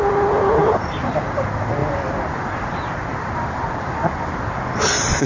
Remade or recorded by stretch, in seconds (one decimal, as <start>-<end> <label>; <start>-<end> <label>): 0.0-5.3 recorded